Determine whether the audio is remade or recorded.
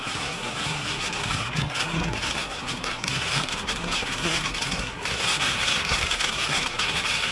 remade